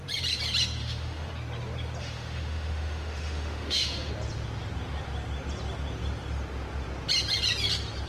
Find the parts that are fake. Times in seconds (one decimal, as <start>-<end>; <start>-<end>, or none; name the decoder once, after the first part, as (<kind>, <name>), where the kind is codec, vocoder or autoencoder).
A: 0.8-1.3 (autoencoder, DAC-VAE); 2.0-4.1